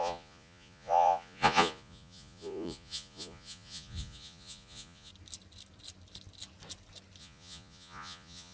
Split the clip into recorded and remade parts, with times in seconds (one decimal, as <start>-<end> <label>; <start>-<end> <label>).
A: 0.0-5.1 remade; 5.1-7.2 recorded; 7.2-8.5 remade